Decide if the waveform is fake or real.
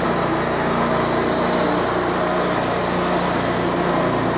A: real